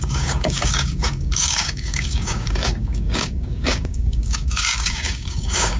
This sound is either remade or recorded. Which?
remade